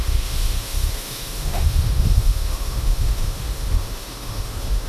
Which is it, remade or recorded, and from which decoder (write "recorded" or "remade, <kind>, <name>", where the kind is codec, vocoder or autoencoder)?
remade, autoencoder, DAC-VAE